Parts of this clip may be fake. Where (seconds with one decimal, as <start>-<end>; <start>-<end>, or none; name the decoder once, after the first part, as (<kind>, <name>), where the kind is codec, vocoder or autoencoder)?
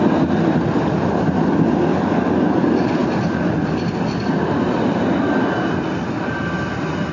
3.0-3.8 (vocoder, BigVGAN v2)